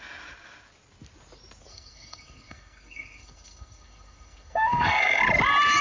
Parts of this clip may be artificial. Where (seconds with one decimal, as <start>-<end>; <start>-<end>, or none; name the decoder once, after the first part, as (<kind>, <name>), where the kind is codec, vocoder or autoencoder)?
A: 1.7-5.2 (codec, SNAC)